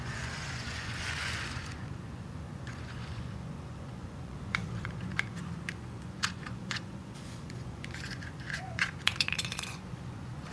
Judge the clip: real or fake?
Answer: fake